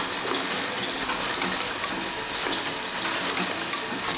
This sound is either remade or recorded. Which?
recorded